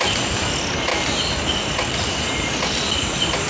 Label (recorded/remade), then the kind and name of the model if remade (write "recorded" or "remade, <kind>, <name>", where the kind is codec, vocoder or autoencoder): recorded